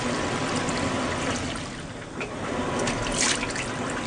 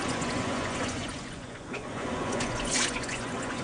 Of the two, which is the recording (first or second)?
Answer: first